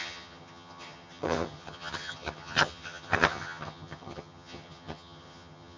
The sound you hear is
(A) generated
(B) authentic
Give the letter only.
A